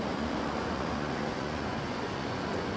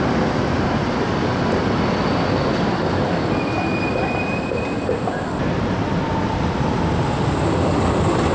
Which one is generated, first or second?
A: first